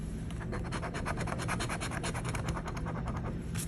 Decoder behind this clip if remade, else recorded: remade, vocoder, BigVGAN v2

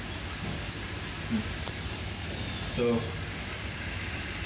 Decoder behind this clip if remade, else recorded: recorded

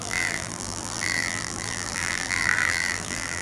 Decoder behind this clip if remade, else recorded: remade, vocoder, BigVGAN v2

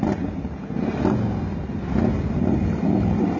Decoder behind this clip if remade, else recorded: recorded